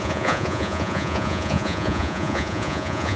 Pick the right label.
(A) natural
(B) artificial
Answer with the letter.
B